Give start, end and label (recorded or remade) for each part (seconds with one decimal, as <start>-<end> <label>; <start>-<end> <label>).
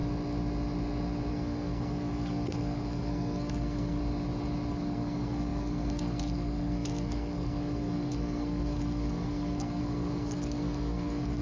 0.0-1.3 recorded; 1.3-4.0 remade; 4.0-4.7 recorded; 4.7-11.4 remade